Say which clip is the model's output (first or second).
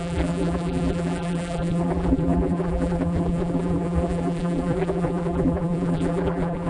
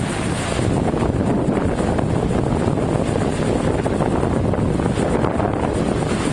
first